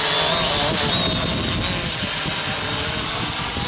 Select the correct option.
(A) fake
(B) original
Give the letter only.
B